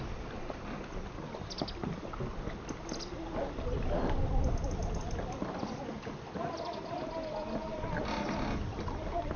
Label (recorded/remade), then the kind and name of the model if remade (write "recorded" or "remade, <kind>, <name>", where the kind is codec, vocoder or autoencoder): recorded